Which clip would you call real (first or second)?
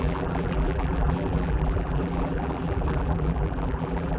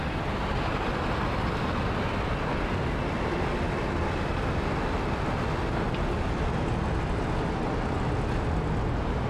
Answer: second